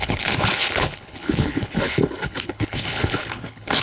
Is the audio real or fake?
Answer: fake